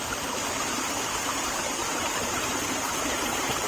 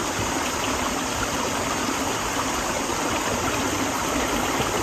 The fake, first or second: first